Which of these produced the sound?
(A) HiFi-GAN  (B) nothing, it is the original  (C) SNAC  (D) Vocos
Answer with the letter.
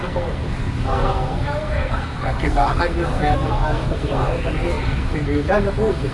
C